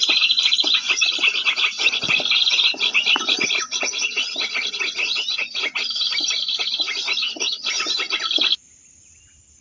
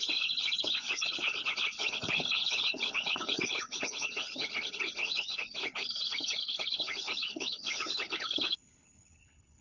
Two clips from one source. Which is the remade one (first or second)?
second